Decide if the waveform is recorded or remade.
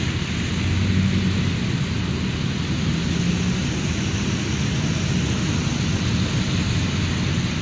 recorded